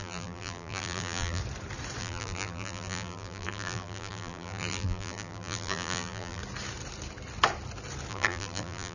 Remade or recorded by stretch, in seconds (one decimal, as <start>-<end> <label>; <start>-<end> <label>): 0.0-1.4 remade; 1.4-2.0 recorded; 2.0-6.4 remade; 6.4-8.1 recorded; 8.1-8.9 remade